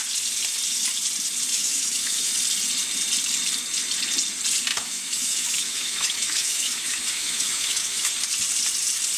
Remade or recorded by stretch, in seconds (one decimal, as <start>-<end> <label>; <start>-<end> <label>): 0.0-1.5 recorded; 1.5-2.3 remade; 2.3-4.7 recorded; 4.7-8.1 remade; 8.1-9.2 recorded